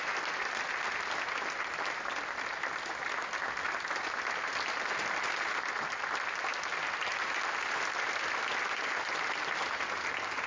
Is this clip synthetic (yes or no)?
no